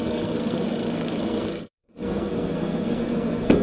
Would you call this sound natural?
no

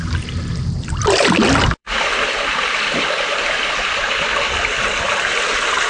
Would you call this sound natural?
no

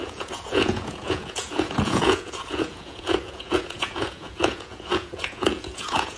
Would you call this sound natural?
no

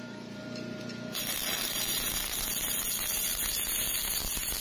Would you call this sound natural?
yes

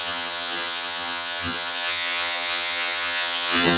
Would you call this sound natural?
no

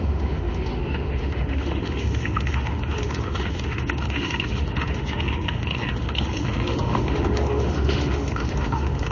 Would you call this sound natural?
no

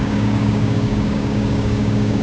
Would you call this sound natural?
no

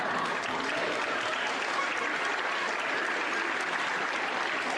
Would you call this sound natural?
yes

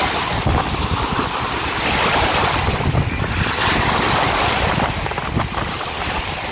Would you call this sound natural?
yes